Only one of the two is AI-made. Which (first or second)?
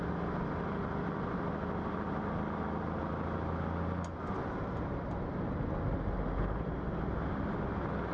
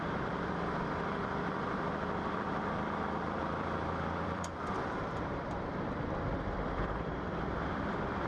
second